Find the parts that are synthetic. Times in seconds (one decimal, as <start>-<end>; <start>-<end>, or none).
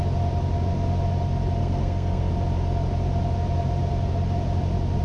1.6-2.3